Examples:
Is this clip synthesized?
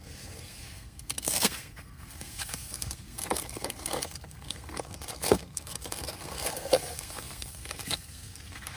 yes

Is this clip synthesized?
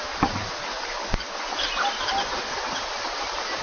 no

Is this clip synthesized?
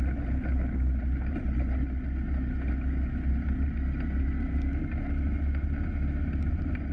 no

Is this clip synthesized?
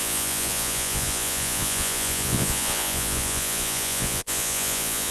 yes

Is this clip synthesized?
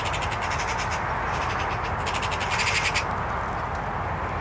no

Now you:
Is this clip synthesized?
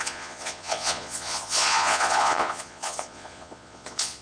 yes